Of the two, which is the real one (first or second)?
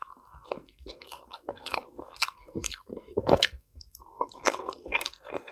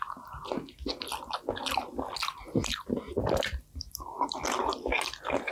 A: second